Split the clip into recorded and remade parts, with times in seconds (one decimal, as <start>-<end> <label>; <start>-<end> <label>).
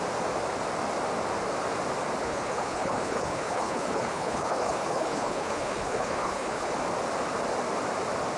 0.0-2.2 recorded; 2.2-6.7 remade; 6.7-8.4 recorded